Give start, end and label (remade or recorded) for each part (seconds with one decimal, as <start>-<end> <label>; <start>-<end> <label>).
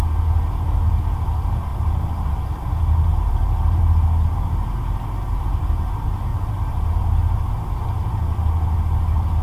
0.0-3.1 recorded; 3.1-3.8 remade; 3.8-6.3 recorded; 6.3-7.0 remade; 7.0-9.4 recorded